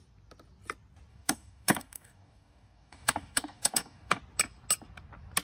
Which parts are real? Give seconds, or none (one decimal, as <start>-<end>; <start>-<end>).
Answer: 0.0-1.1; 4.2-5.4